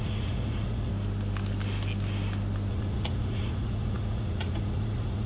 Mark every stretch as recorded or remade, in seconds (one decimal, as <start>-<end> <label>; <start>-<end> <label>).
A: 0.0-0.9 remade; 0.9-2.7 recorded; 2.7-5.3 remade